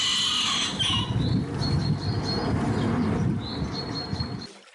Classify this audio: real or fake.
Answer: real